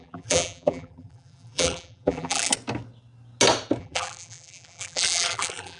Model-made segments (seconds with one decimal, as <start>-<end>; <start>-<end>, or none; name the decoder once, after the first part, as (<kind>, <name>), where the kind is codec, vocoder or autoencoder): 0.0-2.5 (vocoder, BigVGAN v2); 3.8-5.8